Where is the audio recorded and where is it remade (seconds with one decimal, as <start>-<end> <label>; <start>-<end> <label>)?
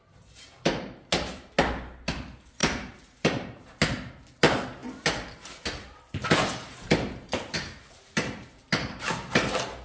0.0-2.6 recorded; 2.6-3.6 remade; 3.6-9.8 recorded